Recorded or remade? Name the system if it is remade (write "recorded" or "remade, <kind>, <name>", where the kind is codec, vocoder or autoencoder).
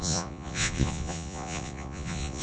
remade, vocoder, Vocos